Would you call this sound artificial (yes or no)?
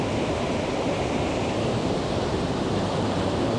yes